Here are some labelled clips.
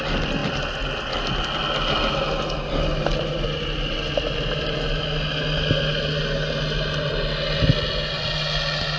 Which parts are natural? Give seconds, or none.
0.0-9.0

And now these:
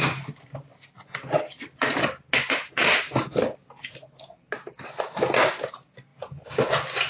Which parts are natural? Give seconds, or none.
0.0-7.1

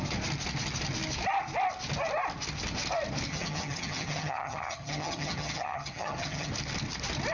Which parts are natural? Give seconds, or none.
0.0-3.3; 6.5-7.3

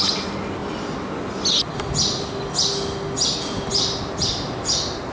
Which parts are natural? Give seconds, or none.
0.0-5.1

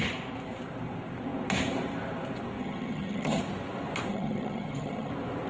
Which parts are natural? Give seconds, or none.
0.0-2.6; 3.4-4.1; 5.1-5.5